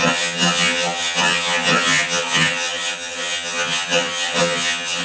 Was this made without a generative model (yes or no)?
no